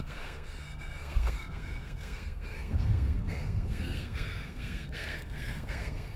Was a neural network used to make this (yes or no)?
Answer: yes